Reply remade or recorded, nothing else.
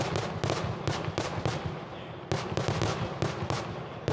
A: recorded